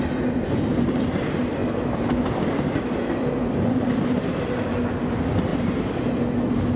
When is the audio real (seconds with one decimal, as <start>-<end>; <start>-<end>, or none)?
0.0-5.5; 6.1-6.8